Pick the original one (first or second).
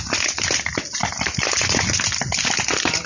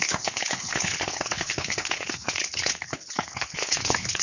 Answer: first